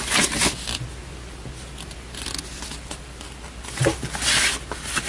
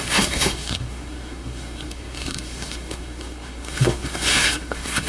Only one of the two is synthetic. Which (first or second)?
second